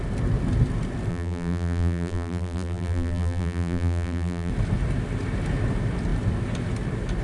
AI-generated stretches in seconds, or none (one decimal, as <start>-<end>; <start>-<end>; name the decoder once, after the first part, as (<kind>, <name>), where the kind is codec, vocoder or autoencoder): 1.1-4.5 (vocoder, BigVGAN v2)